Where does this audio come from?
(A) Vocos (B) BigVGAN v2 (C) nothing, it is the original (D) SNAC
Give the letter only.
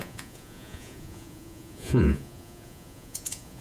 A